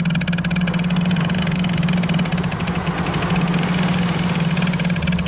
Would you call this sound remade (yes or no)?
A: no